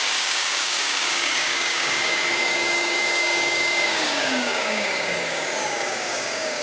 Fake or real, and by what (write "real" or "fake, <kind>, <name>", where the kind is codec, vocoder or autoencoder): fake, codec, DAC